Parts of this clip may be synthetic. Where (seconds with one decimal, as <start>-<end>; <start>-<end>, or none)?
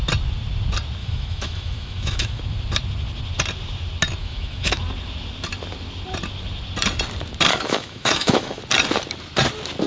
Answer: 1.0-2.4; 4.2-4.8; 7.5-8.6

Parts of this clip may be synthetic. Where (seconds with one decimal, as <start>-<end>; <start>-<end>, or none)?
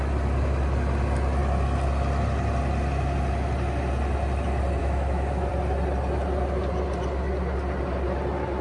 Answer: 4.8-5.5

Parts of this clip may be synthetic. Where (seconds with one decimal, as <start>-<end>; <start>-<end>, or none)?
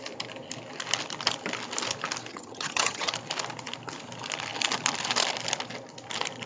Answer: 2.3-3.1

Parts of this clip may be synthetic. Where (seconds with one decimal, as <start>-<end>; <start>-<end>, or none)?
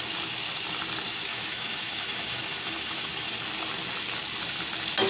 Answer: 1.3-3.3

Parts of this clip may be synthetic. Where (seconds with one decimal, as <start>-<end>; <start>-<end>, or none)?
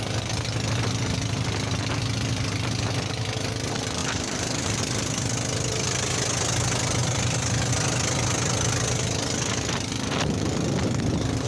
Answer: 4.0-4.8; 7.0-7.7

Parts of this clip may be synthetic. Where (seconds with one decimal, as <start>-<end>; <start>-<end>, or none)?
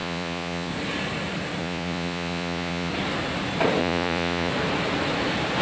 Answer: 0.0-0.7; 1.6-2.9; 3.8-4.5